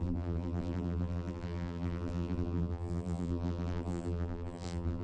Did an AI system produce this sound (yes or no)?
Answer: yes